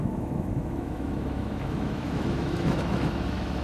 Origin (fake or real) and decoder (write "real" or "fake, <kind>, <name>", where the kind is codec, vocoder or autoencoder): fake, autoencoder, DAC-VAE